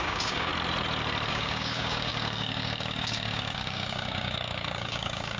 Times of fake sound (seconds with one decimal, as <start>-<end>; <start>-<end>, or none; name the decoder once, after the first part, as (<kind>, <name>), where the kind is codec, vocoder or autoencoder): 0.0-0.5 (codec, DAC); 1.3-5.4